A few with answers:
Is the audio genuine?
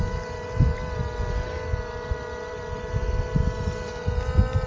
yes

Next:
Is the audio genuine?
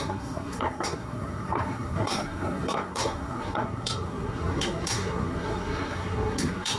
no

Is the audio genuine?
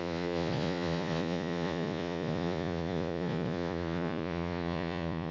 no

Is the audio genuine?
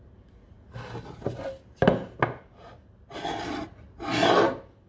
yes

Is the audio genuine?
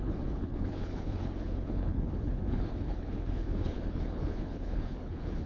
no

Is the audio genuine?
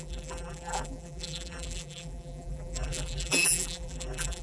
no